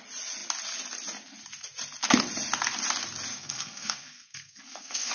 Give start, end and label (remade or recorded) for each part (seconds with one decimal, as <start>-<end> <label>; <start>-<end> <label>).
0.0-3.3 recorded; 3.3-5.1 remade